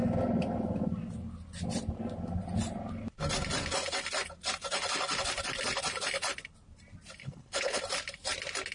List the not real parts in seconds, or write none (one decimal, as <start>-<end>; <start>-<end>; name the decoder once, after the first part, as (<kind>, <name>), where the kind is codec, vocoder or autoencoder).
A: 7.2-7.8 (codec, HILCodec)